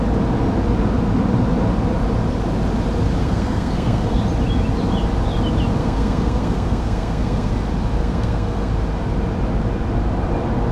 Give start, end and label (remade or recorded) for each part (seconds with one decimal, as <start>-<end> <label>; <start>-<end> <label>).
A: 0.0-3.2 recorded; 3.2-4.2 remade; 4.2-5.8 recorded; 5.8-7.5 remade; 7.5-8.0 recorded; 8.0-8.7 remade; 8.7-10.7 recorded